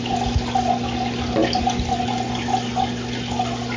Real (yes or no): yes